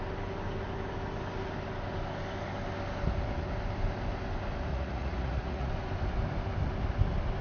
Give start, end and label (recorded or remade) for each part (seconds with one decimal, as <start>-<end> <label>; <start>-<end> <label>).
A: 0.0-4.7 recorded; 4.7-5.7 remade; 5.7-7.4 recorded